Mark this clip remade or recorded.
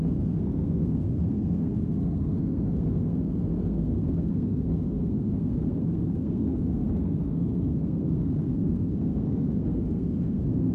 remade